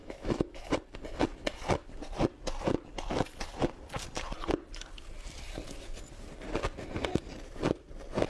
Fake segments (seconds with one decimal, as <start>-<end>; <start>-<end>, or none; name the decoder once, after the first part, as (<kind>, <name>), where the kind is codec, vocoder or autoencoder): 0.0-0.7 (autoencoder, DAC-VAE)